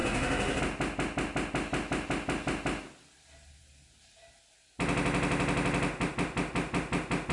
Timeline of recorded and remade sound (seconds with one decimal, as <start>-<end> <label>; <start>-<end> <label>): 0.0-0.6 remade; 0.6-7.3 recorded